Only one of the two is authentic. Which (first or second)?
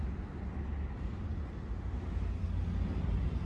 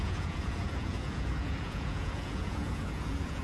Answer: first